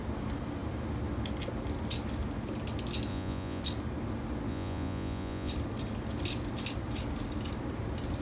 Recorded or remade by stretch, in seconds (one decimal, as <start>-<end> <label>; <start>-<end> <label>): 0.0-3.1 recorded; 3.1-3.6 remade; 3.6-4.5 recorded; 4.5-5.5 remade; 5.5-8.2 recorded